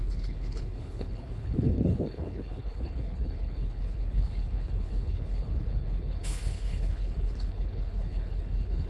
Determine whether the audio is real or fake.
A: fake